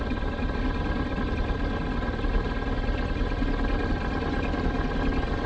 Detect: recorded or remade recorded